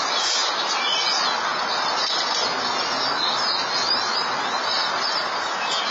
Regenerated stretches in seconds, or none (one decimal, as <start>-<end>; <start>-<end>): none